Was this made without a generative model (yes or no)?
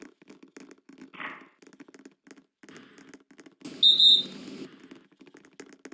yes